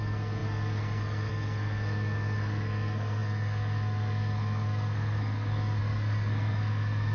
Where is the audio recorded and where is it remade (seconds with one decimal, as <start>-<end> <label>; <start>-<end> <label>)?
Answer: 0.0-7.1 remade